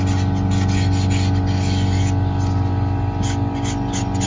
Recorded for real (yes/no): yes